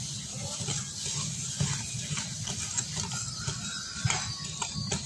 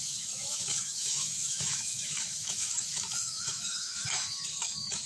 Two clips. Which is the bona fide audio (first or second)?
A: first